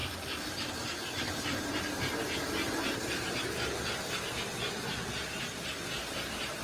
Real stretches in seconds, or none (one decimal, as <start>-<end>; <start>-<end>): 0.0-6.6